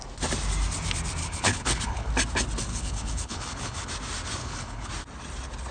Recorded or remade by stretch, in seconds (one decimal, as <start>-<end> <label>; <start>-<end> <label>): 0.0-1.2 recorded; 1.2-2.1 remade; 2.1-2.7 recorded; 2.7-3.9 remade; 3.9-4.4 recorded; 4.4-4.9 remade; 4.9-5.7 recorded